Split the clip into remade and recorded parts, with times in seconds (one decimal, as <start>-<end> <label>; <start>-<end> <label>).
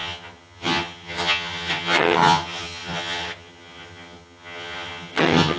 0.0-5.6 remade